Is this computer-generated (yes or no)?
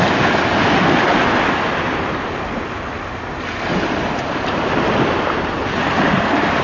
no